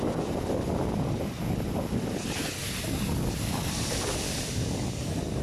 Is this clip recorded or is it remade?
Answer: recorded